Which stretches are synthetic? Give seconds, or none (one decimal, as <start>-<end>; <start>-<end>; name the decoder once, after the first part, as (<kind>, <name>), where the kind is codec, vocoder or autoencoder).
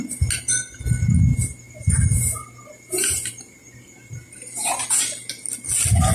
1.3-5.0 (vocoder, BigVGAN v2)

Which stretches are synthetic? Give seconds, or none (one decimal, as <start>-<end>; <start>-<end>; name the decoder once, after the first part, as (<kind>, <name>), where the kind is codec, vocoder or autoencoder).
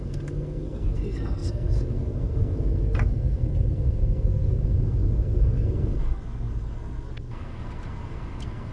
0.0-8.7 (codec, SNAC)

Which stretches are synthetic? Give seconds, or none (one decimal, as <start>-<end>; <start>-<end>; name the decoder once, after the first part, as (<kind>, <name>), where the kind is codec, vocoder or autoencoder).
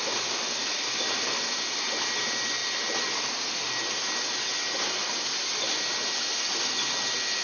none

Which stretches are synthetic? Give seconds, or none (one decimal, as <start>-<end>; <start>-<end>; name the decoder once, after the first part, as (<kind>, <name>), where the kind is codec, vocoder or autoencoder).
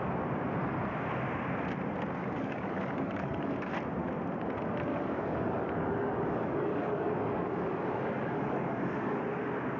2.2-3.7 (codec, DAC); 4.9-9.2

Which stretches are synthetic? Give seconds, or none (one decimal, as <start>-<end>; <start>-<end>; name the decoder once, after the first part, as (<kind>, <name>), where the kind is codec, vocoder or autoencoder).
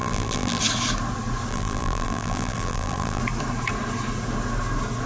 0.0-0.6 (vocoder, BigVGAN v2); 1.5-3.2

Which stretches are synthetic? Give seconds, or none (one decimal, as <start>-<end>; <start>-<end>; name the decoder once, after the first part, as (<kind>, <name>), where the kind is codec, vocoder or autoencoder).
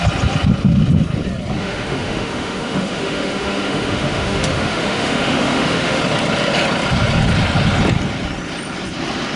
1.6-6.0 (autoencoder, DAC-VAE)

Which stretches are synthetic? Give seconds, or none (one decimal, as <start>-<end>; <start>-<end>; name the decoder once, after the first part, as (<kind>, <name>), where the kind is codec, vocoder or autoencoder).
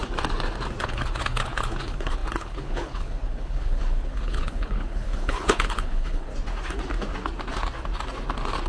0.8-6.3 (codec, HILCodec)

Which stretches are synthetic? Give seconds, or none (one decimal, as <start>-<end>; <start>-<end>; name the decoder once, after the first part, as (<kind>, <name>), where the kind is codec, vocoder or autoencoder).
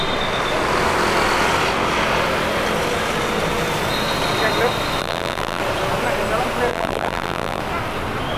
5.0-5.6 (vocoder, BigVGAN v2); 6.7-7.6